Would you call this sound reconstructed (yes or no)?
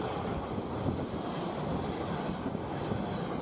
no